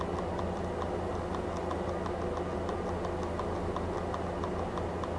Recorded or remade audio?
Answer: recorded